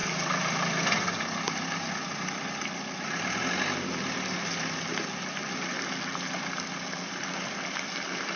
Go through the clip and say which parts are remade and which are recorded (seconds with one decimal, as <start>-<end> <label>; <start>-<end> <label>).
0.0-8.4 recorded